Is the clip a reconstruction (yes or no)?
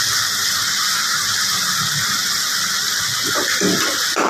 no